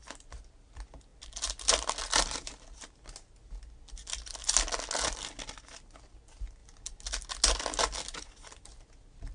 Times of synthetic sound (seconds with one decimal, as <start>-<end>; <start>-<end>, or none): none